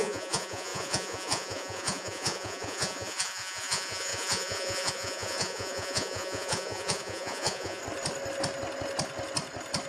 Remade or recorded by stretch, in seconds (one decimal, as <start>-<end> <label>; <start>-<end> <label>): 0.0-7.8 remade; 7.8-9.9 recorded